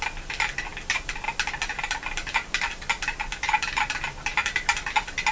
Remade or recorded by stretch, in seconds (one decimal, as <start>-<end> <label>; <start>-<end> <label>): 0.0-5.3 recorded